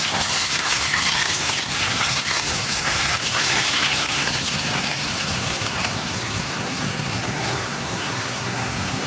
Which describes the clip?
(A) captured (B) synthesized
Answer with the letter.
B